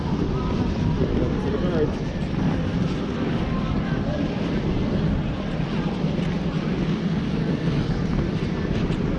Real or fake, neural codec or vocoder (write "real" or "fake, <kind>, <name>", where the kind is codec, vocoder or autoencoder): real